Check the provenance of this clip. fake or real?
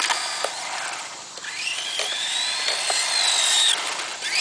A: real